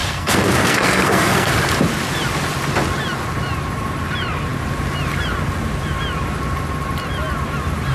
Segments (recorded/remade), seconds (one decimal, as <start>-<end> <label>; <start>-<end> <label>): 0.0-1.5 remade; 1.5-7.9 recorded